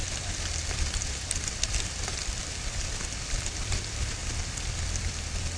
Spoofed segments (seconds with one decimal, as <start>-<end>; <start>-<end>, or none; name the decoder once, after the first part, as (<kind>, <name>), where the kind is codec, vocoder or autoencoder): none